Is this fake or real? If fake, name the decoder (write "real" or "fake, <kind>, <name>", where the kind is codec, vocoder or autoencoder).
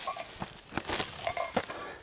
real